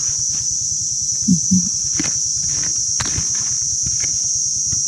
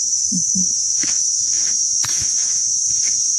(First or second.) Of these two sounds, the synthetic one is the second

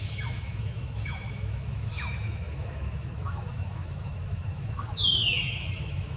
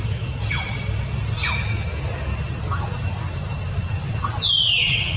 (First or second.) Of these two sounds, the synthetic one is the first